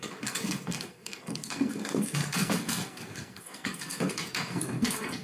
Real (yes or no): no